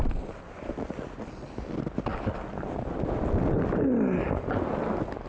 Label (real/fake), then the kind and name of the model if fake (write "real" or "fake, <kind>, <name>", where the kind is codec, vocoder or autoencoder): real